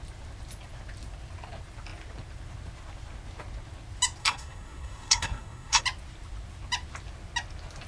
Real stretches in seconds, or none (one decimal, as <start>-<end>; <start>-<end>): 0.0-4.2; 5.8-7.9